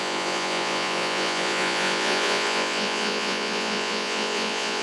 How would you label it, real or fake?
fake